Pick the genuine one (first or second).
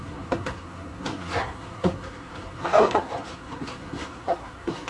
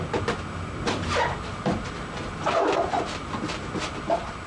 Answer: second